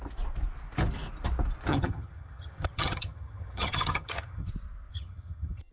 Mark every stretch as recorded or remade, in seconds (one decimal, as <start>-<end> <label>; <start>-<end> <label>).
0.0-1.7 recorded; 1.7-4.5 remade; 4.5-4.9 recorded; 4.9-5.7 remade